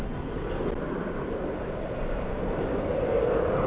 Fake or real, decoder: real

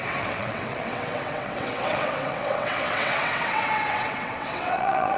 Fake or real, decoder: fake, vocoder, WaveNeXt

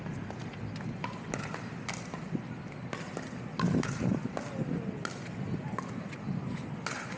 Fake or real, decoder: real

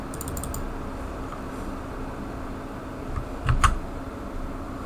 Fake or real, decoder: real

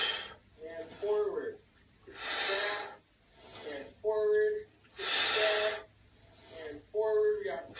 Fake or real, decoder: real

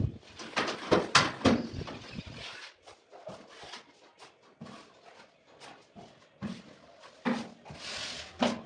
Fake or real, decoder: real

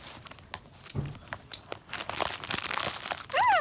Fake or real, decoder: real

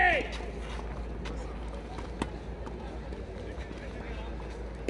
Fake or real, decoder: real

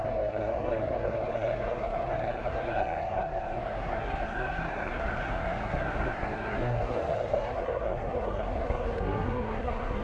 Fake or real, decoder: fake, codec, SNAC